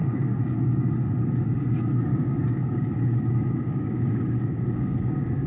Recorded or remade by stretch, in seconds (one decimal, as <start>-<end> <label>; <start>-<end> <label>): 0.0-0.9 remade; 0.9-2.1 recorded; 2.1-5.5 remade